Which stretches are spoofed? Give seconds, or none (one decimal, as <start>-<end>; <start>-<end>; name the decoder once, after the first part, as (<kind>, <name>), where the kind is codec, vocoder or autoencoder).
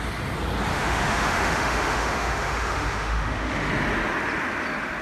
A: 0.7-3.7 (autoencoder, DAC-VAE)